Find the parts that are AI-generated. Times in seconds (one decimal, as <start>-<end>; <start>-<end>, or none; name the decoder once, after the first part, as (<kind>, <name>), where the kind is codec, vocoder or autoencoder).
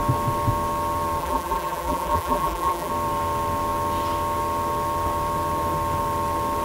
1.2-2.9 (vocoder, BigVGAN v2)